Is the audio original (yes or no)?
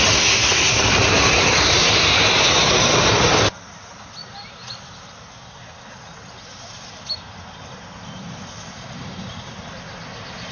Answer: yes